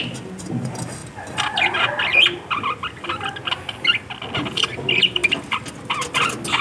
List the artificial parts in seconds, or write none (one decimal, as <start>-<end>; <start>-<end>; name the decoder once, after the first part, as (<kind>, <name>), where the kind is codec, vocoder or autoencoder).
none